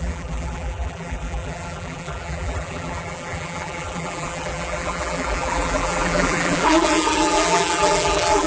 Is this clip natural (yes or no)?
no